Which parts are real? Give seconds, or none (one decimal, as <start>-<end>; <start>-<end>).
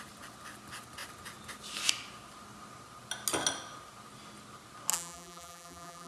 0.0-4.9